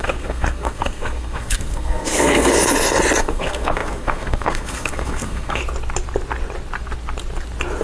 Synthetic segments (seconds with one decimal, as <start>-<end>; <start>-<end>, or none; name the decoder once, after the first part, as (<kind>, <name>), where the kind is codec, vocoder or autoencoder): 0.0-2.5 (codec, SNAC); 3.2-5.6